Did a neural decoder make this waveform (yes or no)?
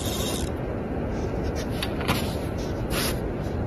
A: no